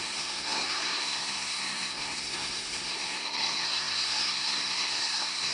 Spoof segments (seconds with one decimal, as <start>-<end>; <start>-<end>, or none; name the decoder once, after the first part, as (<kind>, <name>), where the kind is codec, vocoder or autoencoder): 0.0-5.5 (codec, SNAC)